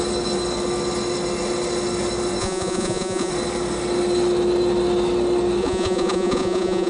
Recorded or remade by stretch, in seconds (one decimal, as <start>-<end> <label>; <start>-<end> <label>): 0.0-2.4 recorded; 2.4-3.3 remade; 3.3-5.6 recorded; 5.6-6.9 remade